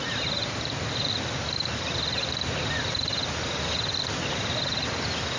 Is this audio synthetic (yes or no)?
no